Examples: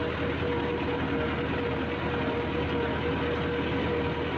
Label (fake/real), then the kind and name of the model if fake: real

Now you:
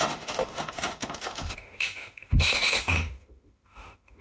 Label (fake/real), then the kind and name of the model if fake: fake, autoencoder, DAC-VAE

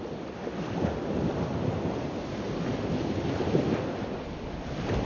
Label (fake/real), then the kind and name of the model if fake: real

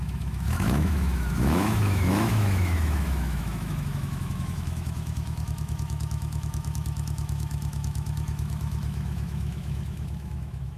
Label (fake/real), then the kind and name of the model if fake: fake, autoencoder, DAC-VAE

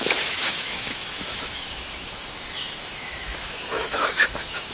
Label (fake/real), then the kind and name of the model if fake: fake, autoencoder, DAC-VAE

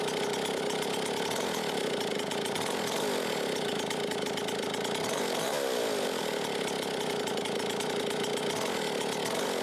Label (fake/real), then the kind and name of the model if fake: real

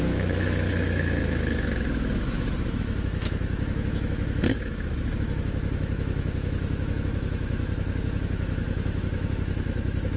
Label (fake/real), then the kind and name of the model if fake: fake, autoencoder, DAC-VAE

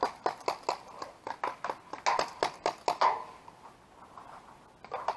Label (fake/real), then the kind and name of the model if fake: real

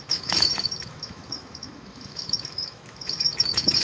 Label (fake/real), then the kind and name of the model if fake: fake, autoencoder, DAC-VAE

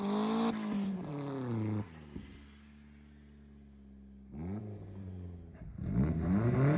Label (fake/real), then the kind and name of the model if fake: real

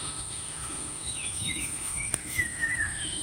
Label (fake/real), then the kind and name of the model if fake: fake, autoencoder, DAC-VAE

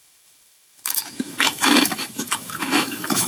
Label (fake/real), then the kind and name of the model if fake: fake, autoencoder, DAC-VAE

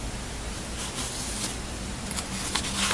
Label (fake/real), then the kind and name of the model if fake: real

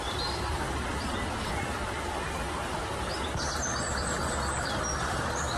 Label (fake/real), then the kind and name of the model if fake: real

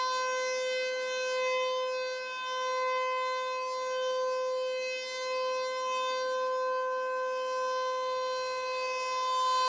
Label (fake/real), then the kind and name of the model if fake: real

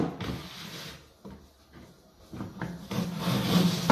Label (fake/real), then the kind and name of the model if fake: real